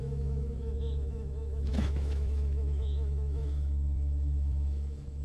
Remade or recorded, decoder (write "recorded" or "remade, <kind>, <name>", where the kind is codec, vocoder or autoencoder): remade, autoencoder, DAC-VAE